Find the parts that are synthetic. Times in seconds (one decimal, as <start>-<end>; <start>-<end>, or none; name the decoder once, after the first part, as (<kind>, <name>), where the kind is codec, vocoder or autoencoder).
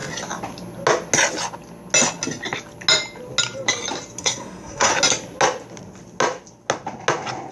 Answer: 4.2-4.9 (codec, SNAC)